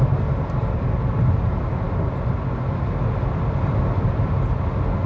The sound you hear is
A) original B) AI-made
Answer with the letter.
A